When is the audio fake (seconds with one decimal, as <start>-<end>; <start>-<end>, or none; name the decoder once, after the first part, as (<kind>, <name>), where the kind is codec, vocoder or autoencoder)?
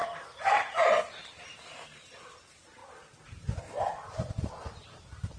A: none